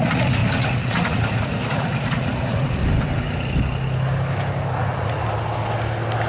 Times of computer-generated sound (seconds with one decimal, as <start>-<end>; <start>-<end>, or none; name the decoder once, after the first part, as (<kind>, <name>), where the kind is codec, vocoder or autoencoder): 0.0-2.8 (vocoder, Vocos); 4.7-5.2